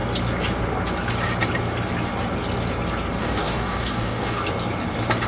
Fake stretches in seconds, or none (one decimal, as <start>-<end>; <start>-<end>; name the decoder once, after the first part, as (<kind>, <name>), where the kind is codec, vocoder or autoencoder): 3.2-4.4 (codec, DAC)